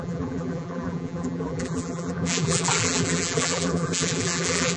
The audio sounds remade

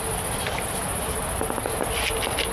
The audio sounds recorded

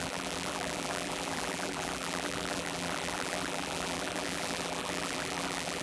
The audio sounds remade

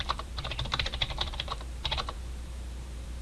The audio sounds remade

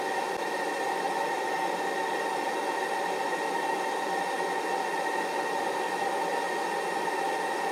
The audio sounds recorded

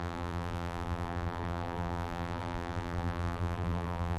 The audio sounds remade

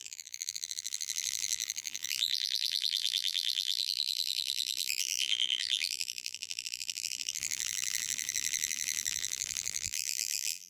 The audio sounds remade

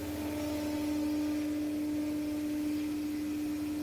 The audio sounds recorded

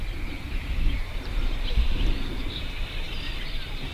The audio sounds remade